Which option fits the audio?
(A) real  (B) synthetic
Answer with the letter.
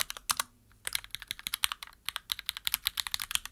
A